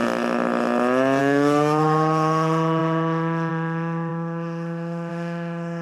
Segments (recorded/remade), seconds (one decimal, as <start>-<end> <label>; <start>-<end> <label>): 0.0-1.2 recorded; 1.2-5.8 remade